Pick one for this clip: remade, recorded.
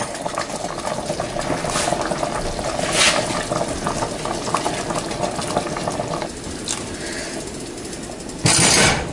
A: recorded